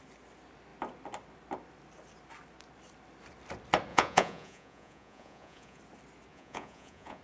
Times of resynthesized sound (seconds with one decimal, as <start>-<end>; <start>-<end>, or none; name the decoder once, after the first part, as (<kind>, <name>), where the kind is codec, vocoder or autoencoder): 3.9-5.8 (vocoder, Vocos); 6.3-7.2